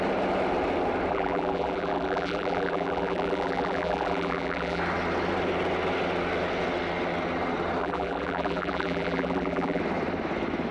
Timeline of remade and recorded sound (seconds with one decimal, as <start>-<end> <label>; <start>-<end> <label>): 0.0-1.1 recorded; 1.1-4.8 remade; 4.8-7.8 recorded; 7.8-9.8 remade; 9.8-10.7 recorded